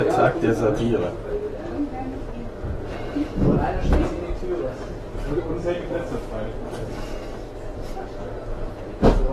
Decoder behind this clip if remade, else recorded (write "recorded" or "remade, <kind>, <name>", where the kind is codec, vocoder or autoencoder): recorded